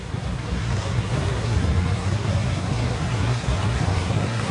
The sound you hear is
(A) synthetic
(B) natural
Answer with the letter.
A